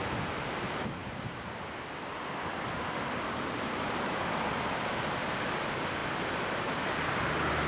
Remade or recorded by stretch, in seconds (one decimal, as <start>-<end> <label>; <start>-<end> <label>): 0.0-6.0 recorded; 6.0-6.8 remade; 6.8-7.7 recorded